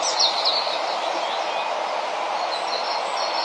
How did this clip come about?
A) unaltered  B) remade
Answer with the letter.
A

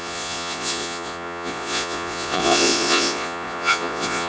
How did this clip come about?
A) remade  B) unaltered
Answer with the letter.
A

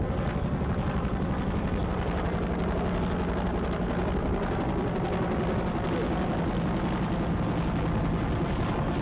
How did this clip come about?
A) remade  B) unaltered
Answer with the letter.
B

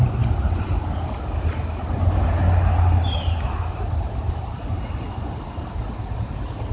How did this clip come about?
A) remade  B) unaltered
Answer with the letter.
B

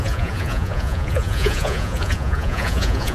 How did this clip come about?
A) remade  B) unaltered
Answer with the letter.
A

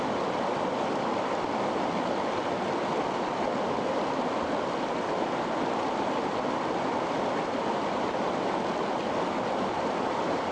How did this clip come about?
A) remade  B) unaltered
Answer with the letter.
B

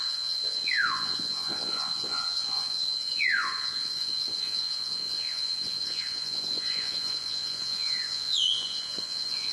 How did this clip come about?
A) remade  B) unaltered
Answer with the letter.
A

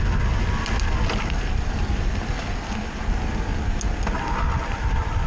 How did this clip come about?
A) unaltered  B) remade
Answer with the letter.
A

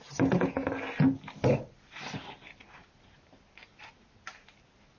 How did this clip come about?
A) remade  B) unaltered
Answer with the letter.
B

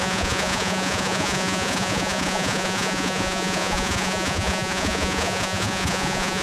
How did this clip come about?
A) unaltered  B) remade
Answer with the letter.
B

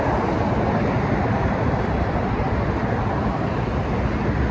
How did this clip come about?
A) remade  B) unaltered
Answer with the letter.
B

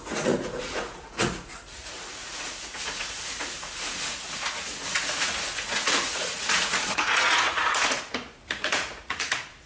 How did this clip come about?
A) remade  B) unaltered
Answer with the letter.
A